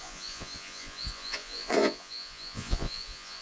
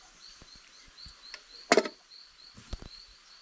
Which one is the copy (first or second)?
first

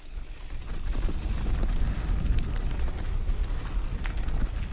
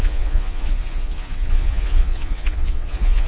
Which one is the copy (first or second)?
second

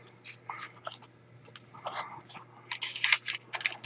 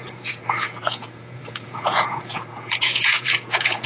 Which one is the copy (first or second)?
second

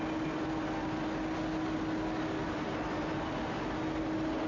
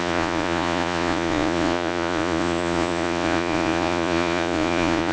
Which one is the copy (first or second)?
second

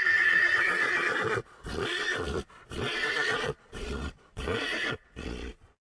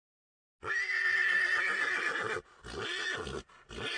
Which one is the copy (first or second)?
first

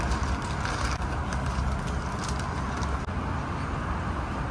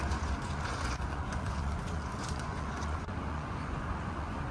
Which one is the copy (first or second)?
second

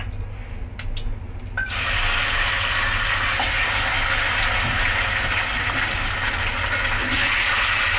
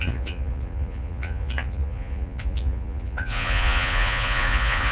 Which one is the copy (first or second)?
second